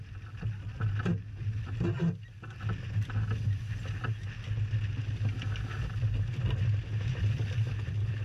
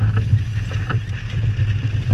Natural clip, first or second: first